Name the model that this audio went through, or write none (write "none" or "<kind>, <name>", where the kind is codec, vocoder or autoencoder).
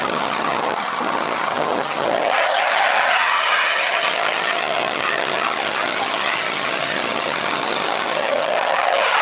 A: vocoder, HiFi-GAN